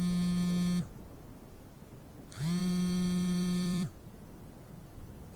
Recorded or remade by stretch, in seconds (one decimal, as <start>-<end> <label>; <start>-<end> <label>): 0.0-2.6 recorded; 2.6-5.4 remade